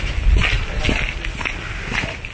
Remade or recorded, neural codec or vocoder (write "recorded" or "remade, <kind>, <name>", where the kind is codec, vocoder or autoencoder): recorded